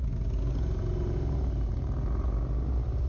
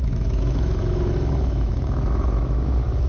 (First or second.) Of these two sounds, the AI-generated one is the second